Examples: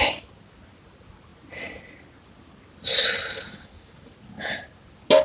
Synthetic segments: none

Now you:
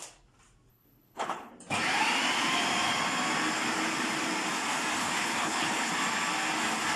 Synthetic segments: 0.7-1.5; 5.0-5.9

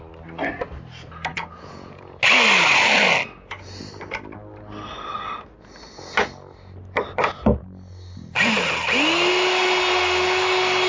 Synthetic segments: 1.3-2.2

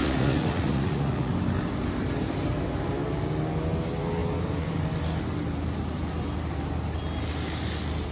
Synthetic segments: 0.0-1.3

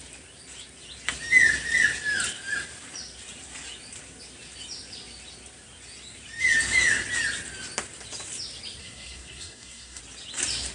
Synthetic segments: 8.8-10.0

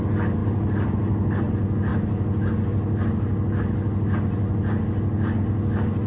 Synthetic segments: 0.4-1.5

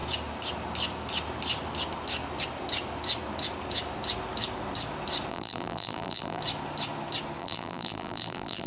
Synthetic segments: 5.3-6.4; 7.4-8.7